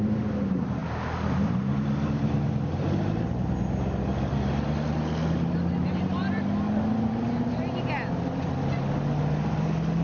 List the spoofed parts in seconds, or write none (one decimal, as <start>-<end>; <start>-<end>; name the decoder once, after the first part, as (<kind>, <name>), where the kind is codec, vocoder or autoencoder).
none